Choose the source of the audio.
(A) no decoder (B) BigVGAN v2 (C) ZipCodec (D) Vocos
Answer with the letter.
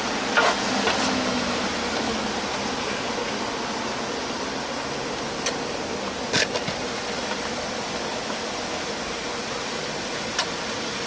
A